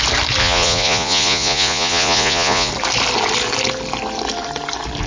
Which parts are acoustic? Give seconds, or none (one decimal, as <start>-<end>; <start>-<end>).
0.0-0.4; 2.7-5.1